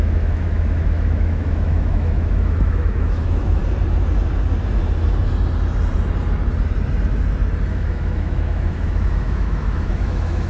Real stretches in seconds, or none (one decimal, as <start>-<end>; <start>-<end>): 3.6-7.7